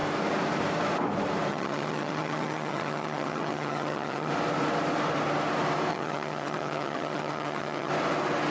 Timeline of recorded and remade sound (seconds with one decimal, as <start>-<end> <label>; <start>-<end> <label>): 0.0-1.5 recorded; 1.5-4.3 remade; 4.3-5.9 recorded; 5.9-7.9 remade; 7.9-8.5 recorded